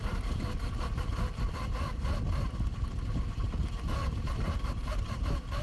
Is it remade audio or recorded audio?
recorded